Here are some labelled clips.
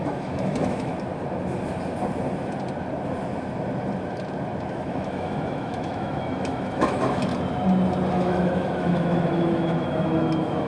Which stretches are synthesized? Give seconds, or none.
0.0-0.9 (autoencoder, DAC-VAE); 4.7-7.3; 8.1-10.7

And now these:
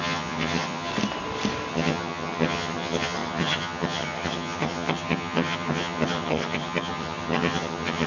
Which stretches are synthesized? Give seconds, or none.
0.0-0.9 (vocoder, HiFi-GAN); 1.7-8.1

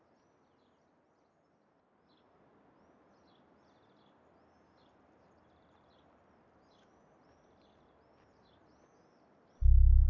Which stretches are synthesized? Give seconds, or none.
none

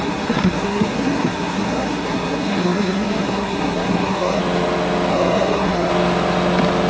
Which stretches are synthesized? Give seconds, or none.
0.0-4.4 (codec, SNAC); 5.1-5.9

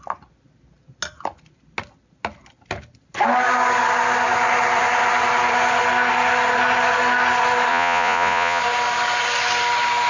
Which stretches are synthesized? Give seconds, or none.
7.7-8.6 (vocoder, Vocos)

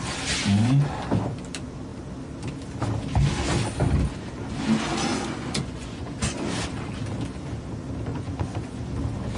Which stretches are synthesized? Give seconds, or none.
5.1-6.4 (vocoder, Vocos); 8.1-8.9

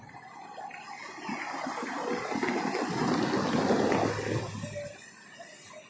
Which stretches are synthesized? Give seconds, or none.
none

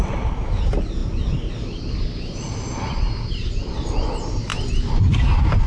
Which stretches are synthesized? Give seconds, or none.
none